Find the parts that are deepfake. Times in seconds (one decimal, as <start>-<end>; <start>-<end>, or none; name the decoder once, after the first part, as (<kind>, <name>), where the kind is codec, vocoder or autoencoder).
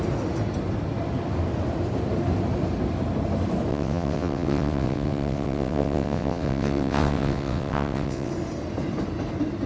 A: 3.7-8.3 (vocoder, WaveNeXt)